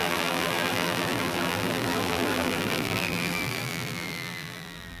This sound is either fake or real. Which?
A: fake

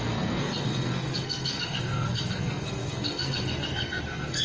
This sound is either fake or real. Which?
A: fake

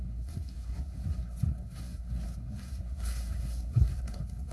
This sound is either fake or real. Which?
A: fake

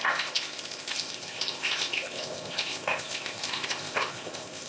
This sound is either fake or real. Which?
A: fake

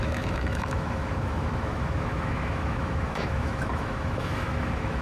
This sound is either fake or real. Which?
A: fake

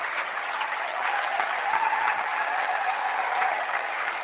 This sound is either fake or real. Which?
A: fake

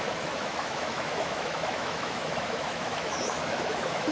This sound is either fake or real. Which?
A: fake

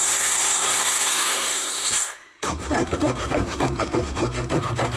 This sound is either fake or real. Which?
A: fake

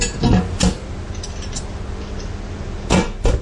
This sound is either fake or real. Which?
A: real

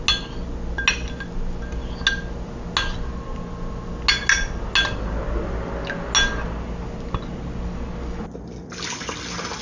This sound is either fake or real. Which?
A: real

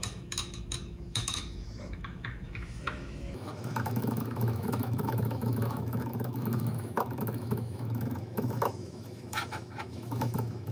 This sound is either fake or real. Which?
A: fake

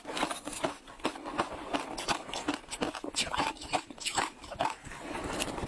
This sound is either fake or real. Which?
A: real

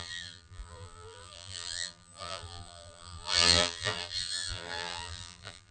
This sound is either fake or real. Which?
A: fake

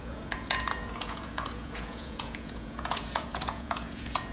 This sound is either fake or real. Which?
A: fake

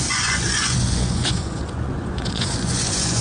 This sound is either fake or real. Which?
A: fake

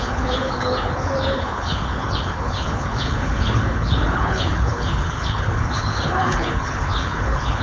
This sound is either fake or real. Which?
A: fake